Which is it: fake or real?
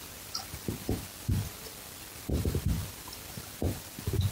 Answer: fake